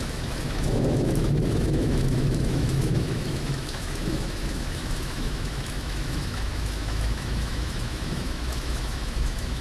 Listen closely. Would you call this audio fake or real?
fake